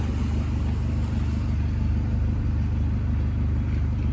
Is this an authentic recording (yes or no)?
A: yes